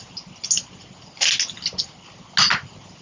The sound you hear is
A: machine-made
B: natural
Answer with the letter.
B